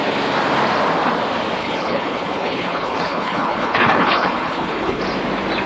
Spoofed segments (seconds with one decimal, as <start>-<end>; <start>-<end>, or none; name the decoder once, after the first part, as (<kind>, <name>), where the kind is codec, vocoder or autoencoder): 1.6-5.0 (codec, HILCodec)